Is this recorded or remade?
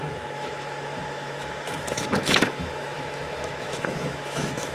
remade